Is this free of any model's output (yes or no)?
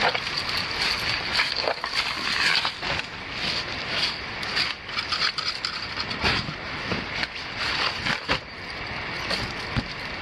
yes